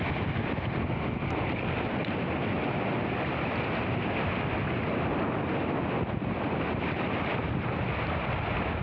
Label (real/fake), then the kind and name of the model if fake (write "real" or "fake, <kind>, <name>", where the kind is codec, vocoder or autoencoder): real